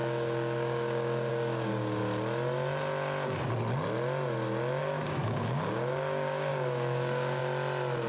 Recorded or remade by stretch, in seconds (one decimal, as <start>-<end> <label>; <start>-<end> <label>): 0.0-2.0 remade; 2.0-4.8 recorded; 4.8-7.4 remade; 7.4-8.1 recorded